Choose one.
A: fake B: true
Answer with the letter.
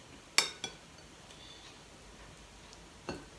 B